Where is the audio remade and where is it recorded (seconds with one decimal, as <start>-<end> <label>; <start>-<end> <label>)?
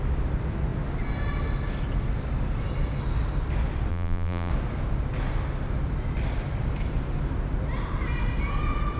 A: 0.0-3.9 recorded; 3.9-4.5 remade; 4.5-9.0 recorded